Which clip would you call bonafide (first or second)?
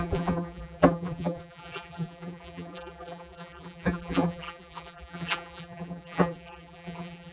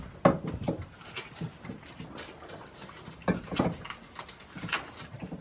second